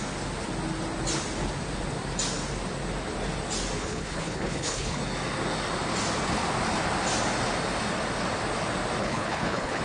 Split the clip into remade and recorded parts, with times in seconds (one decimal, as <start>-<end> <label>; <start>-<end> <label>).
0.0-3.8 recorded; 3.8-5.0 remade; 5.0-9.0 recorded; 9.0-9.8 remade